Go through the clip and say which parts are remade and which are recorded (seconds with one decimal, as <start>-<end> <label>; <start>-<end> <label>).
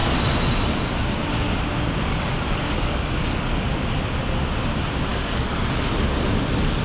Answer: 0.0-2.1 recorded; 2.1-3.7 remade; 3.7-5.1 recorded; 5.1-5.9 remade; 5.9-6.8 recorded